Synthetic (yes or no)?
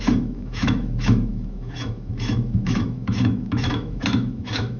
yes